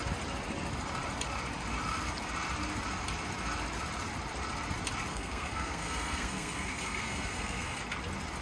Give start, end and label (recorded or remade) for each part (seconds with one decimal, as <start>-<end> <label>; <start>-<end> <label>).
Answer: 0.0-5.1 recorded; 5.1-7.8 remade; 7.8-8.4 recorded